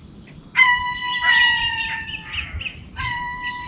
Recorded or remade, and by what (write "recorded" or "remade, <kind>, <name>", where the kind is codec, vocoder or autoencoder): remade, vocoder, BigVGAN v2